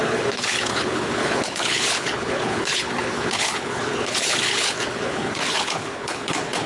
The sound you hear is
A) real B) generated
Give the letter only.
B